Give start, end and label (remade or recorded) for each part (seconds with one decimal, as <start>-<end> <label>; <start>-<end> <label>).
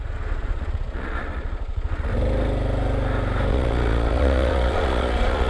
0.0-2.1 remade; 2.1-3.5 recorded; 3.5-5.5 remade